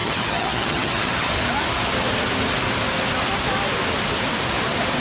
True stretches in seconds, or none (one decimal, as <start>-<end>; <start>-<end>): 1.3-5.0